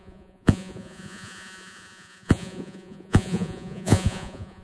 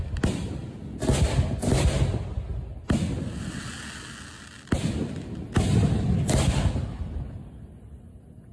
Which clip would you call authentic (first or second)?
second